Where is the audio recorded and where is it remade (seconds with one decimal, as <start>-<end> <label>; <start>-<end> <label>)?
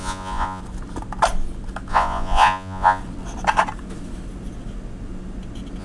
0.0-0.6 remade; 0.6-1.9 recorded; 1.9-3.0 remade; 3.0-5.8 recorded